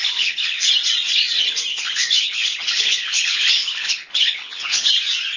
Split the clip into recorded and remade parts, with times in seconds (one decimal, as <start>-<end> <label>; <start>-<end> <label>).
0.0-0.7 remade; 0.7-1.7 recorded; 1.7-4.9 remade; 4.9-5.4 recorded